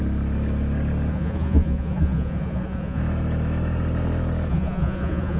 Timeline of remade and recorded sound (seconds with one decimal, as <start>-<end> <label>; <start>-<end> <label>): 0.0-1.1 recorded; 1.1-3.0 remade; 3.0-4.5 recorded; 4.5-5.4 remade